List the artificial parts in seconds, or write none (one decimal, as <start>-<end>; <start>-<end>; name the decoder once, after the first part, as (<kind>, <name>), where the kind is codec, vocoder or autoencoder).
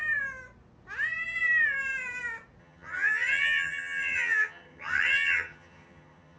2.6-6.4 (vocoder, HiFi-GAN)